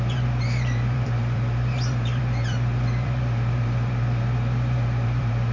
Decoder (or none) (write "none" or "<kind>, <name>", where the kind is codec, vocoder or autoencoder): vocoder, BigVGAN v2